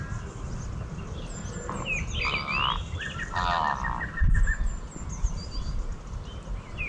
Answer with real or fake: real